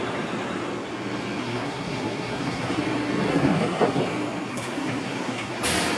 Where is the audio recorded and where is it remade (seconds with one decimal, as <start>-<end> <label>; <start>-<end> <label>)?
0.0-1.4 recorded; 1.4-2.8 remade; 2.8-3.3 recorded; 3.3-4.0 remade; 4.0-4.5 recorded; 4.5-5.6 remade; 5.6-6.0 recorded